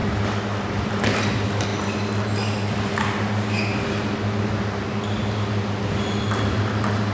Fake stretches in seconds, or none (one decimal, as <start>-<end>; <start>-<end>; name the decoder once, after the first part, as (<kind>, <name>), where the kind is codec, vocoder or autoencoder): none